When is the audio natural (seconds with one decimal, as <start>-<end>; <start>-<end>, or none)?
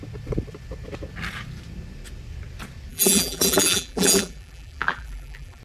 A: 0.0-2.9